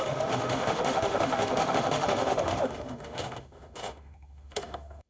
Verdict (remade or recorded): remade